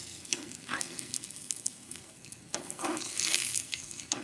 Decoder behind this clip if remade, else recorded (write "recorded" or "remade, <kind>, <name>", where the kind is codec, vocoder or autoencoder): remade, codec, SNAC